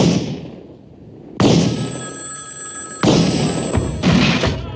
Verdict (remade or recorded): recorded